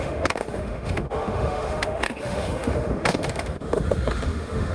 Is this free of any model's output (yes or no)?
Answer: no